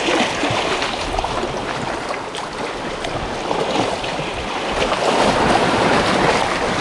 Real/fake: real